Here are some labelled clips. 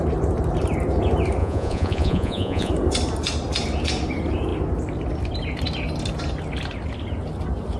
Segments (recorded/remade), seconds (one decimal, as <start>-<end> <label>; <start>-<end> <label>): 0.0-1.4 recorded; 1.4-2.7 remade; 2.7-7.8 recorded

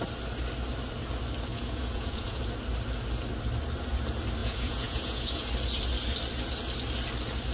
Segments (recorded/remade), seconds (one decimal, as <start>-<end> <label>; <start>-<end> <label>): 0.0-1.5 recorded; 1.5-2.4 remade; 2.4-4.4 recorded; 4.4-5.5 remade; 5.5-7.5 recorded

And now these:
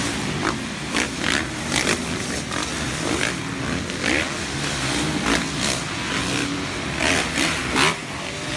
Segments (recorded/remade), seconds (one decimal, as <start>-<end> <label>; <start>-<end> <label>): 0.0-8.6 recorded

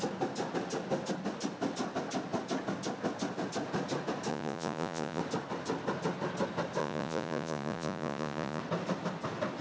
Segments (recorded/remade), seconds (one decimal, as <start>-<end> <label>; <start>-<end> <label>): 0.0-4.3 recorded; 4.3-5.2 remade; 5.2-6.8 recorded; 6.8-8.6 remade; 8.6-9.6 recorded

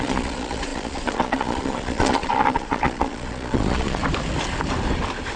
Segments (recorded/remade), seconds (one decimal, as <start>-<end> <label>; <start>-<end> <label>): 0.0-4.0 remade; 4.0-5.4 recorded

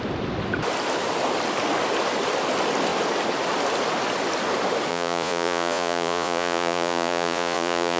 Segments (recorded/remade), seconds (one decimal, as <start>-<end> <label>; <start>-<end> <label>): 0.0-4.9 recorded; 4.9-8.0 remade

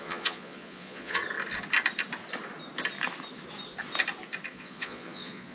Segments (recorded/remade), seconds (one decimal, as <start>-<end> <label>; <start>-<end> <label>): 0.0-1.2 remade; 1.2-4.5 recorded; 4.5-5.5 remade